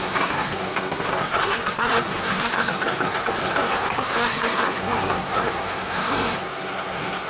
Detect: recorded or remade remade